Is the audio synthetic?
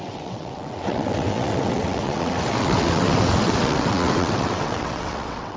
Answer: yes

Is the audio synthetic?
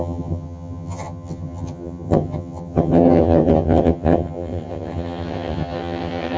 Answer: yes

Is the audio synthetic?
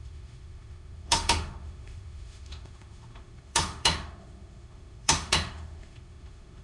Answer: yes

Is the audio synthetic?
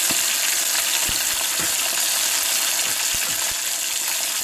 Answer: no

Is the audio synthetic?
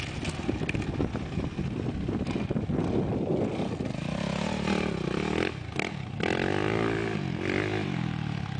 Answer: no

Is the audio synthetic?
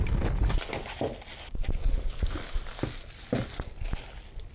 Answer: no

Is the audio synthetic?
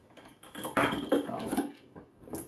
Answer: yes